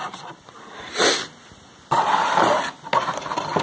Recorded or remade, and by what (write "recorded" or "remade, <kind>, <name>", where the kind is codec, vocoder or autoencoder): recorded